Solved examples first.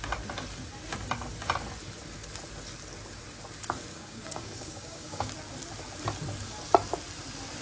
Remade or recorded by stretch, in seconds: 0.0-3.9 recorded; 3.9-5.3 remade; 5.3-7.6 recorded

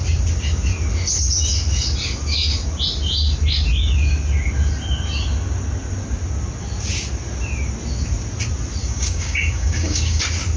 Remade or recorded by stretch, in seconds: 0.0-8.8 recorded; 8.8-10.2 remade; 10.2-10.6 recorded

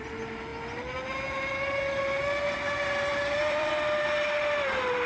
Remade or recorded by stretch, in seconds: 0.0-3.1 recorded; 3.1-3.7 remade; 3.7-5.1 recorded